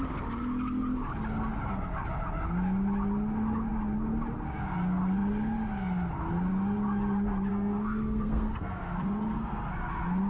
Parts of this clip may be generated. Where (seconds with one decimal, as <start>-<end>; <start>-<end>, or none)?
7.5-9.7